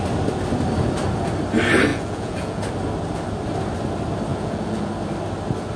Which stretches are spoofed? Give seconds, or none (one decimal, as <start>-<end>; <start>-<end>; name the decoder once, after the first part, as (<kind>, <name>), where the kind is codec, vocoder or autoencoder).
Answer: 1.9-2.7 (vocoder, Vocos); 4.3-4.9